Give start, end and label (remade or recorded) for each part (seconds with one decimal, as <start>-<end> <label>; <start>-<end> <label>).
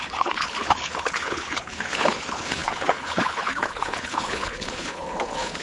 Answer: 0.0-5.6 remade